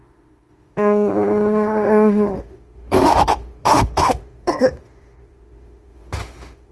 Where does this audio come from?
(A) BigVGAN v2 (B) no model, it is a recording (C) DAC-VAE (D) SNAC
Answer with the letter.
C